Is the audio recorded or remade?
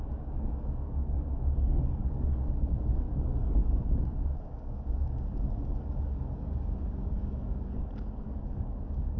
remade